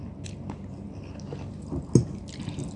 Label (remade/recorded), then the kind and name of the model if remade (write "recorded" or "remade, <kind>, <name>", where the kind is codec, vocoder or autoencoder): recorded